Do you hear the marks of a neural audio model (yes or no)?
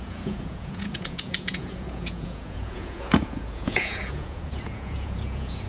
yes